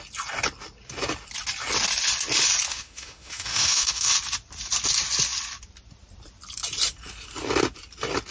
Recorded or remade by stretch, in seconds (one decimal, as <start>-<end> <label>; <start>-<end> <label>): 0.0-2.7 recorded; 2.7-4.1 remade; 4.1-8.3 recorded